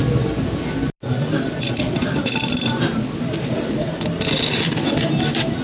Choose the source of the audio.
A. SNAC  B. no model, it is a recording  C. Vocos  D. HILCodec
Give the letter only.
B